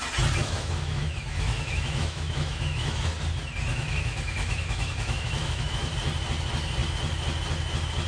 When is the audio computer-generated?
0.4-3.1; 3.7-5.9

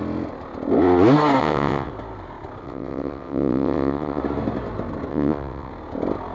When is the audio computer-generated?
1.4-1.9; 2.6-4.2; 5.1-5.7

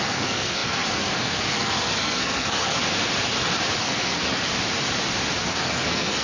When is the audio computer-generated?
0.0-2.8; 3.8-4.5; 5.4-6.2